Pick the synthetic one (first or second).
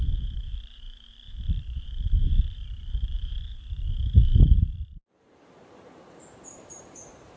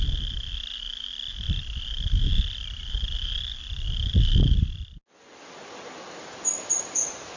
first